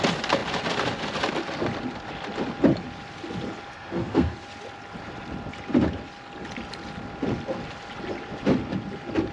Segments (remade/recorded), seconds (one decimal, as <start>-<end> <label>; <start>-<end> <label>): 0.0-3.7 recorded; 3.7-4.3 remade; 4.3-9.3 recorded